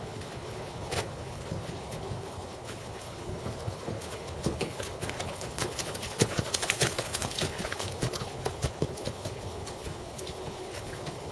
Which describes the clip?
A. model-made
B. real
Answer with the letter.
A